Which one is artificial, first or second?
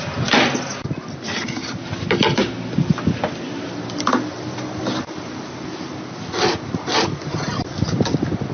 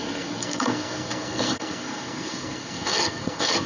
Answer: second